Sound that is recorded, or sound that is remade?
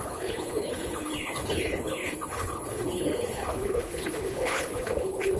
remade